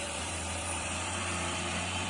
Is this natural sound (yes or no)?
no